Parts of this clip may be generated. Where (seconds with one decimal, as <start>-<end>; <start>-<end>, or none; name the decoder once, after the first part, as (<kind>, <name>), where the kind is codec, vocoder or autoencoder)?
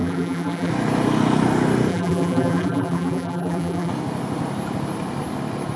0.0-0.7 (vocoder, BigVGAN v2); 1.9-3.9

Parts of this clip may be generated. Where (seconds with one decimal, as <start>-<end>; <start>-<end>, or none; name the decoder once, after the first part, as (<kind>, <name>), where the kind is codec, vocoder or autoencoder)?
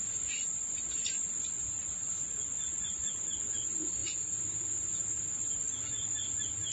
0.0-4.0 (vocoder, BigVGAN v2); 5.4-6.7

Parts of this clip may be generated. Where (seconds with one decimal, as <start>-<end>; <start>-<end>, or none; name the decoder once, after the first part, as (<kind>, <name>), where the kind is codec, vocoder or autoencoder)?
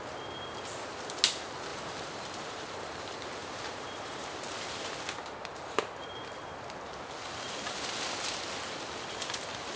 1.7-4.9 (vocoder, BigVGAN v2)